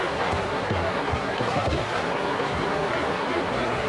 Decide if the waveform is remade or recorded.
remade